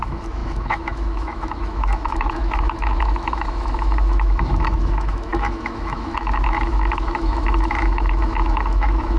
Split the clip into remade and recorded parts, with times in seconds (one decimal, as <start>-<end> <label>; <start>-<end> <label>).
0.0-9.2 remade